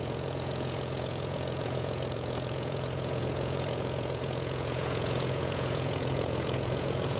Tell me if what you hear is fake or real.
fake